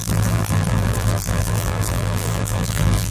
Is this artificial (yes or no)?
yes